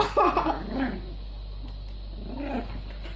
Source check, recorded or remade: recorded